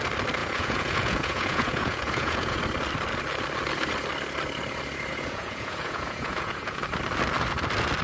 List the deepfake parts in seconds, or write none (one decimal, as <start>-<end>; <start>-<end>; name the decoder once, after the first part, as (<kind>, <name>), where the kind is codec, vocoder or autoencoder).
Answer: 0.4-2.6 (vocoder, Vocos); 5.1-6.8